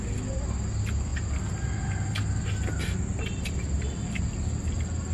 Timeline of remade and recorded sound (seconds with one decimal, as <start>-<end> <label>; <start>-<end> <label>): 0.0-5.1 recorded